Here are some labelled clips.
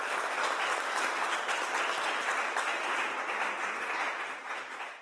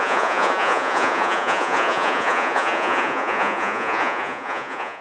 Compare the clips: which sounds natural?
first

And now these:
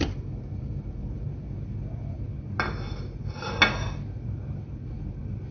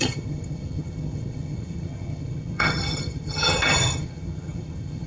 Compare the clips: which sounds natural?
first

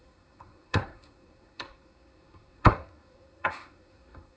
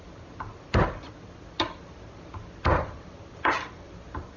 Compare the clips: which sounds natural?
second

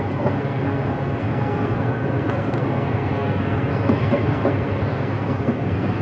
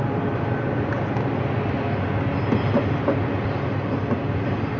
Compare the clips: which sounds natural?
second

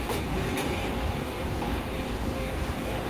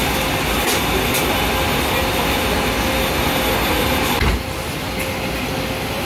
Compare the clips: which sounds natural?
second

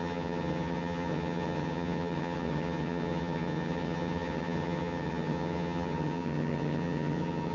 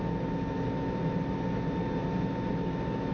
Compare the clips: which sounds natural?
second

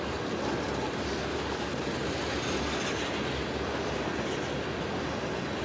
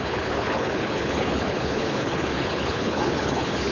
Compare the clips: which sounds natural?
first